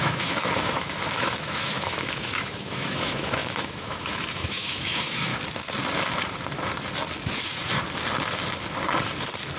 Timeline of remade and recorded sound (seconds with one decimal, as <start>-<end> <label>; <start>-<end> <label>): 0.0-5.3 remade; 5.3-9.6 recorded